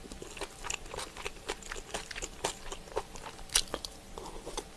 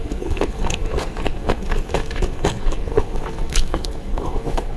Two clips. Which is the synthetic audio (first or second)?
second